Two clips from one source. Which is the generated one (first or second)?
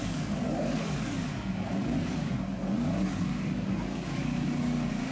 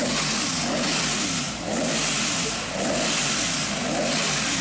first